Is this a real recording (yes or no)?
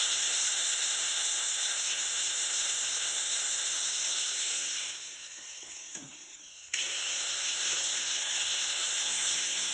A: no